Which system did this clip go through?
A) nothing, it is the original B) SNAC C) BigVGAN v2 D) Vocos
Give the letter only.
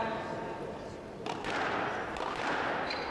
A